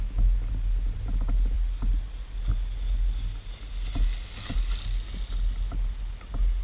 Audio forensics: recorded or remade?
recorded